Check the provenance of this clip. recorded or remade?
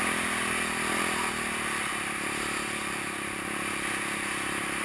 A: recorded